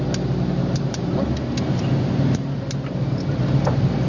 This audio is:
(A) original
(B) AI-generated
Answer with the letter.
A